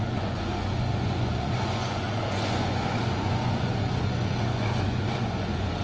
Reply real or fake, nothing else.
fake